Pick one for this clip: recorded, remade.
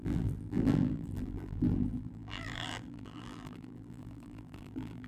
remade